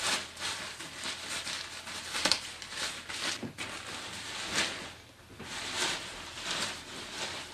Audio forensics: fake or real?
real